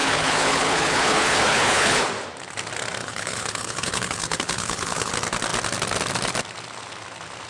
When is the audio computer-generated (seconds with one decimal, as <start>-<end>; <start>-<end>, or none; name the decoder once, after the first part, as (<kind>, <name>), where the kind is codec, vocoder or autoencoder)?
0.0-2.1 (codec, HILCodec); 3.0-5.1